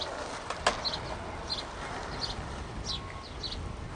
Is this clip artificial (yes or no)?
no